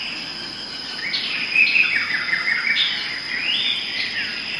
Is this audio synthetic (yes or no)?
no